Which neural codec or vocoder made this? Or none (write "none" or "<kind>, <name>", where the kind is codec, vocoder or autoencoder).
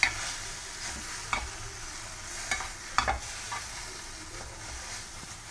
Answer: none